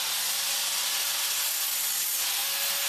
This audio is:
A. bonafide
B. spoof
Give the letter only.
A